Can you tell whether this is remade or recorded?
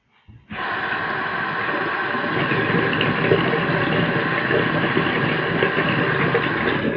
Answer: recorded